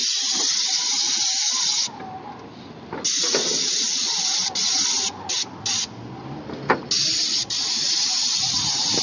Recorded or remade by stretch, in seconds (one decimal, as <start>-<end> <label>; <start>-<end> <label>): 0.0-9.0 recorded